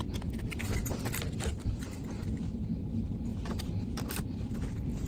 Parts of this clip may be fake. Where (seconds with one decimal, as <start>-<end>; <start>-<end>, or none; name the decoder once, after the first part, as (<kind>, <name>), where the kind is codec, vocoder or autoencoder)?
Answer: none